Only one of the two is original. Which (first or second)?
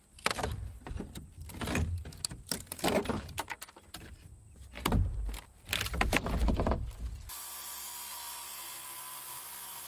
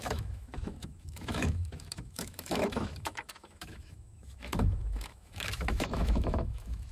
first